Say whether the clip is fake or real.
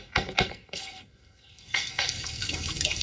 fake